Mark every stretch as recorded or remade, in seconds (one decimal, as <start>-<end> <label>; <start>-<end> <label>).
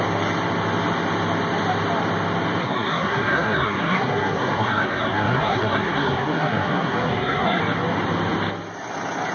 0.0-2.6 recorded; 2.6-7.6 remade; 7.6-9.3 recorded